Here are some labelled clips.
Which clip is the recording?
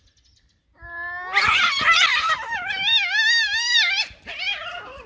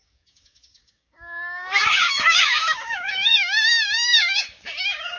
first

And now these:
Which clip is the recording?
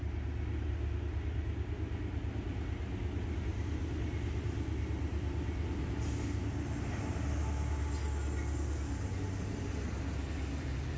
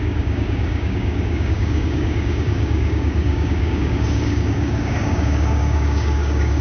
first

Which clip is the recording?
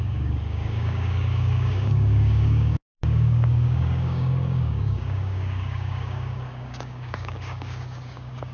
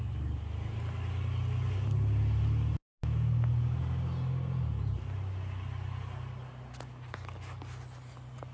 second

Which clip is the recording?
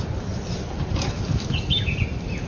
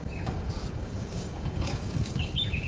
first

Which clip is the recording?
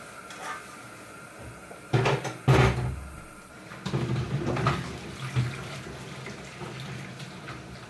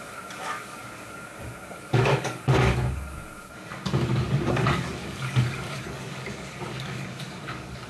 first